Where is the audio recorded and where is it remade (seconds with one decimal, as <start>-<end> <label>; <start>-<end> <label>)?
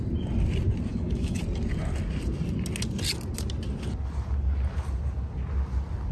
0.0-0.9 recorded; 0.9-1.4 remade; 1.4-6.1 recorded